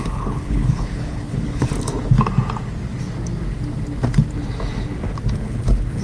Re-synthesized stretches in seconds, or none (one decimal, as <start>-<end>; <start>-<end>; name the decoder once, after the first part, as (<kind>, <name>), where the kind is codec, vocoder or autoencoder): 0.0-1.7 (codec, HILCodec); 5.3-6.0